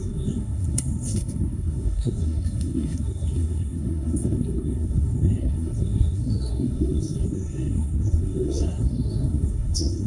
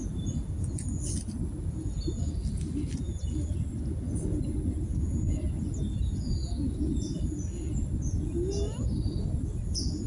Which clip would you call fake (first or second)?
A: first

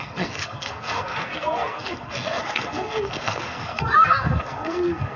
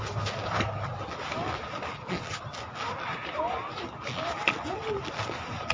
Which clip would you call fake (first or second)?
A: first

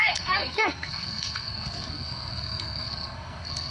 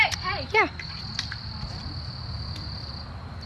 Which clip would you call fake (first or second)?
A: first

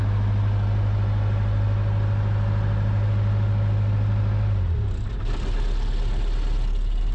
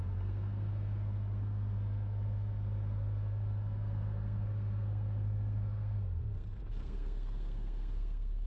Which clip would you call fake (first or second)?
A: second